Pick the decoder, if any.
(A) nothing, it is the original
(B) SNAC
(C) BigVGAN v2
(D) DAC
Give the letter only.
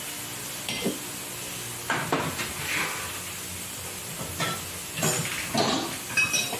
A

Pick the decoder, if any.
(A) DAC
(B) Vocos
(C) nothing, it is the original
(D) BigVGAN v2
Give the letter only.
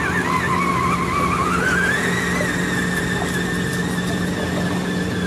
C